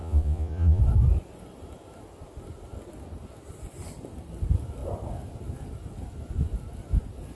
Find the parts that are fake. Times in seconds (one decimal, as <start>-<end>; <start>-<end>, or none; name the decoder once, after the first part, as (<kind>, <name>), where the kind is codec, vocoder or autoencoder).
0.0-0.8 (vocoder, Vocos)

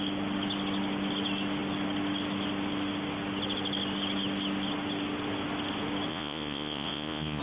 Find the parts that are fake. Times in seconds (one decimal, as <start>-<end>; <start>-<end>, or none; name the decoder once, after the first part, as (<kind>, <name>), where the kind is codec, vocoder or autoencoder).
6.1-7.4 (vocoder, Vocos)